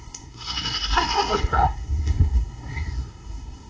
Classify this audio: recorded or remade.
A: remade